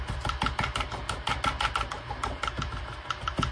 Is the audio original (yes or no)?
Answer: yes